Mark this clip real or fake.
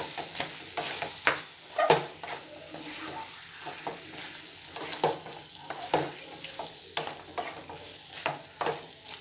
real